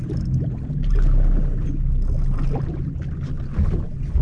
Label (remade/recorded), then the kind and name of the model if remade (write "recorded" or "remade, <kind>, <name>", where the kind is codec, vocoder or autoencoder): recorded